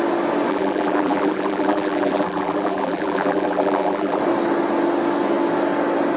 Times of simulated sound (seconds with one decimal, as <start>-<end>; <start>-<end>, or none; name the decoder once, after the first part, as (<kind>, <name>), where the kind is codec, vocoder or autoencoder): 0.5-4.2 (vocoder, BigVGAN v2)